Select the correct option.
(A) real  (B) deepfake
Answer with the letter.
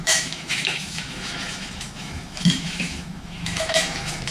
B